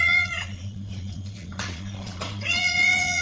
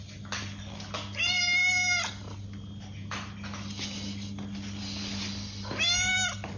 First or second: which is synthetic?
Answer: first